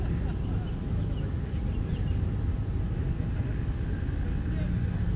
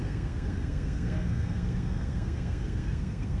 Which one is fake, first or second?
second